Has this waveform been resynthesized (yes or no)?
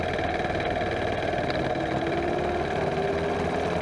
no